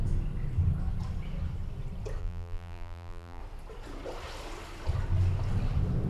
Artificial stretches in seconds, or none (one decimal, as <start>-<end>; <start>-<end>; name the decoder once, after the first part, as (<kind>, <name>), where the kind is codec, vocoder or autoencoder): 2.2-3.4 (vocoder, BigVGAN v2)